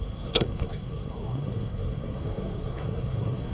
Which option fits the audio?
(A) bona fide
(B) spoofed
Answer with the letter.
B